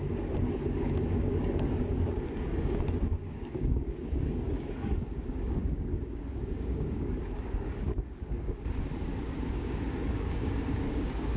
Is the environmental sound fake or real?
fake